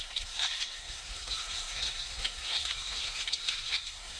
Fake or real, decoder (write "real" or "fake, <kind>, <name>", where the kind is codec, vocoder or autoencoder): fake, codec, SNAC